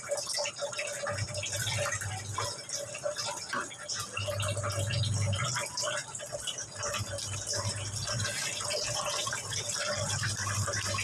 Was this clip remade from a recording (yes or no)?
no